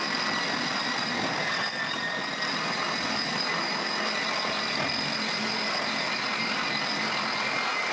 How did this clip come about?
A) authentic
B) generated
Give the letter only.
A